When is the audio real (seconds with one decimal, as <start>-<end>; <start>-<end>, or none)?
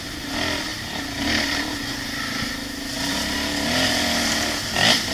0.0-5.1